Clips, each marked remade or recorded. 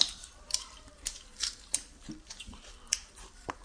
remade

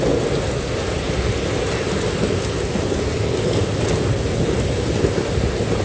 recorded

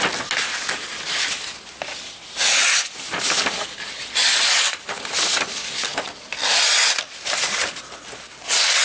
recorded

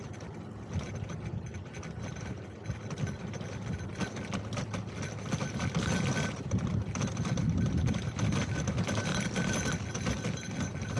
remade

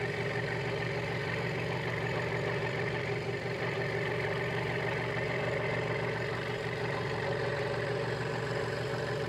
remade